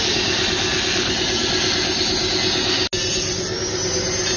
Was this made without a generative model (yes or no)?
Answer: yes